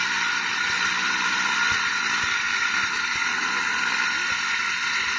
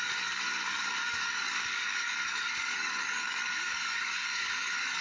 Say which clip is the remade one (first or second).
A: second